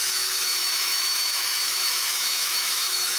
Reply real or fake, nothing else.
fake